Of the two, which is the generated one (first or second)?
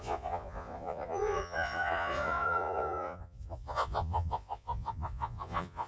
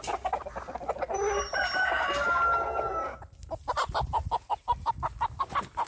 first